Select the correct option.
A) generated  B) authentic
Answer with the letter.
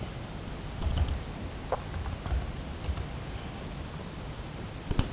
B